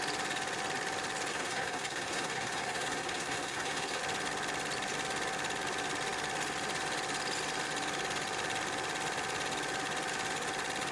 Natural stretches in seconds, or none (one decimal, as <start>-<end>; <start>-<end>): 0.0-1.3; 4.0-10.9